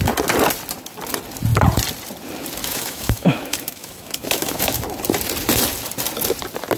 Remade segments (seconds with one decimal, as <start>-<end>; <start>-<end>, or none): 2.6-4.8